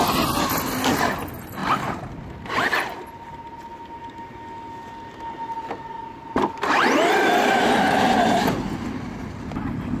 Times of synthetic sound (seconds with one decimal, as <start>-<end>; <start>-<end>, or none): none